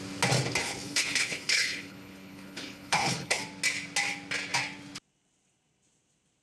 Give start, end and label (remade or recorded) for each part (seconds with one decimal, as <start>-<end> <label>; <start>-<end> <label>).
0.0-0.6 recorded; 0.6-3.4 remade; 3.4-6.4 recorded